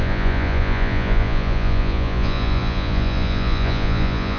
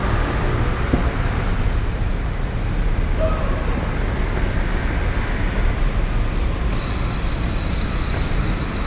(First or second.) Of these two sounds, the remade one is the first